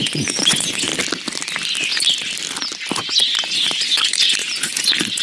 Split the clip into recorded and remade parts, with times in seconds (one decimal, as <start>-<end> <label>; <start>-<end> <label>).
0.0-0.9 remade; 0.9-3.1 recorded; 3.1-5.2 remade